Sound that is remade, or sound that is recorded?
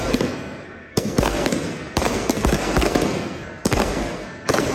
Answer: remade